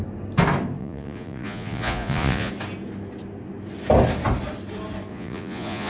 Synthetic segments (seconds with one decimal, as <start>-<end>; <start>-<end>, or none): 0.8-2.5; 5.1-5.9

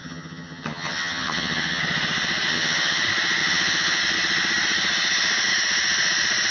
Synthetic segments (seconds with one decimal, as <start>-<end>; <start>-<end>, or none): 0.0-1.8; 2.5-3.0; 3.4-4.0

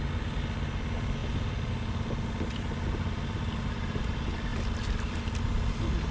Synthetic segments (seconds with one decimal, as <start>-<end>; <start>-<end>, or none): none

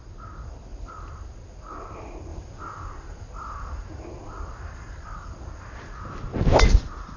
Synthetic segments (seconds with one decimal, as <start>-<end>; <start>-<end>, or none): none